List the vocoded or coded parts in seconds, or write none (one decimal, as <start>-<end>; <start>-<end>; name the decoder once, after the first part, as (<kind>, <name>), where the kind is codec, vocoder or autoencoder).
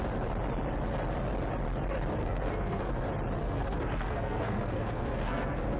2.2-3.0 (codec, SNAC); 3.4-5.8